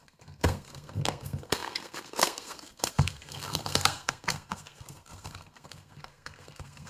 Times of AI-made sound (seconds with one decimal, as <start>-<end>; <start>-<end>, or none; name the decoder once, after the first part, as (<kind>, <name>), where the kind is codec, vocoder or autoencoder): 0.0-6.9 (codec, SNAC)